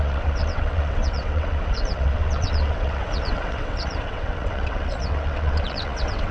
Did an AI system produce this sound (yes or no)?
yes